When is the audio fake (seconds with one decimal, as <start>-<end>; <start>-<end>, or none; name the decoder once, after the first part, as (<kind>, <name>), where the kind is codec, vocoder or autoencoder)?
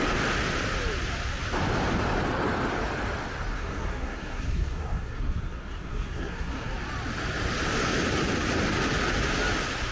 3.5-6.7 (codec, SNAC)